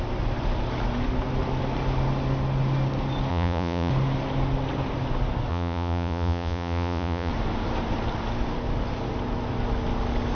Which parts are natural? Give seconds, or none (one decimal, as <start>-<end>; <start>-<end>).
0.0-3.3; 3.9-5.5; 7.3-10.3